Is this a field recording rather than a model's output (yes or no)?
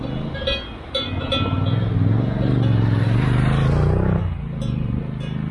yes